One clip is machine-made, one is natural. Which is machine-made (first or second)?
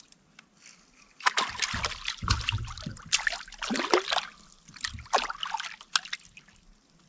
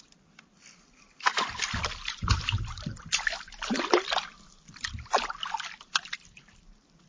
second